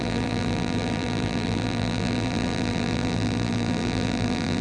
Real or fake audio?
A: fake